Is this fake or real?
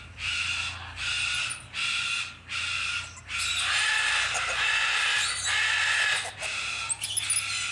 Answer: real